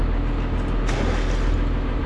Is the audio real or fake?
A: real